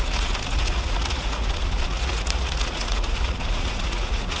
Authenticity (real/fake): fake